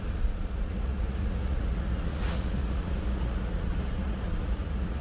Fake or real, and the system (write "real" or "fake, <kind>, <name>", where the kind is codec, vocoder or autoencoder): fake, vocoder, Vocos